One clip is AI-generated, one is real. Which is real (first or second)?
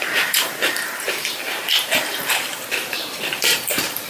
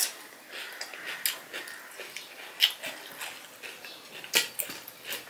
second